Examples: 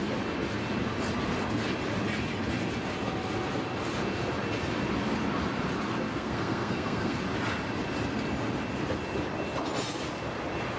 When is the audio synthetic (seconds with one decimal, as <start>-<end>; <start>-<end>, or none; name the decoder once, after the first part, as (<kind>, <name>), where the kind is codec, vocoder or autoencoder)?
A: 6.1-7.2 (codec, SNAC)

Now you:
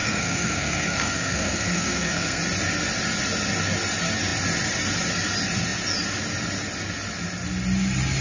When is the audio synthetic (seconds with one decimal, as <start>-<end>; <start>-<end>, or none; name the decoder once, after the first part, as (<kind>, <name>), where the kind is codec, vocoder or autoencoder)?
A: 0.0-2.4 (codec, SNAC)

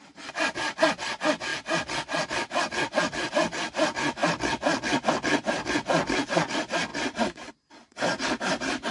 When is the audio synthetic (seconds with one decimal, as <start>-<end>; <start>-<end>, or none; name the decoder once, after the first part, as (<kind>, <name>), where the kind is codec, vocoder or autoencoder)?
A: none